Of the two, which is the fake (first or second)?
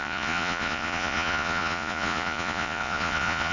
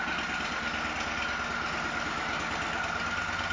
first